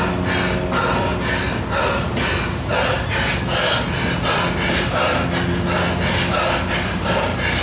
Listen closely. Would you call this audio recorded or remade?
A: recorded